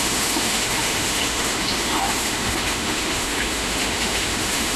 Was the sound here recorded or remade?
remade